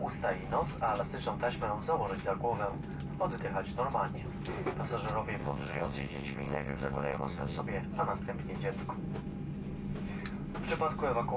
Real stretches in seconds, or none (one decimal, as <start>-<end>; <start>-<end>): 0.0-5.4; 7.6-11.4